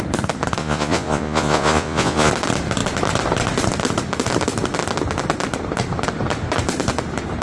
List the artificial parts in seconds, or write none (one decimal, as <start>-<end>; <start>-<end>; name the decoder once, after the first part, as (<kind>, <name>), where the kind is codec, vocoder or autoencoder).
0.6-2.3 (vocoder, Vocos)